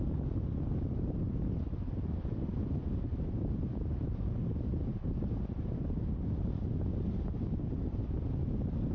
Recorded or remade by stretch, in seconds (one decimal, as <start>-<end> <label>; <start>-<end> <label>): 0.0-3.1 recorded; 3.1-6.0 remade; 6.0-8.9 recorded